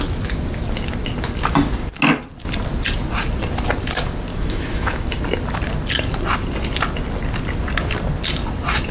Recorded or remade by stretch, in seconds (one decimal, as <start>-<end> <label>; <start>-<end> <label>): 0.0-4.3 recorded; 4.3-5.2 remade; 5.2-8.9 recorded